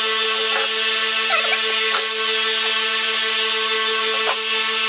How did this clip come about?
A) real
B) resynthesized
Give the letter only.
A